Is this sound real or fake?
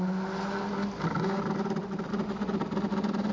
real